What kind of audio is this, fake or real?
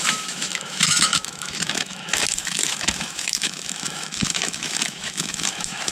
fake